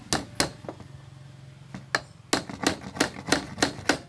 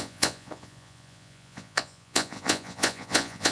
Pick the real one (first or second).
first